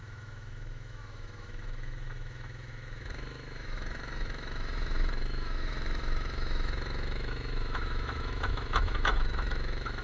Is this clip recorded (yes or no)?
no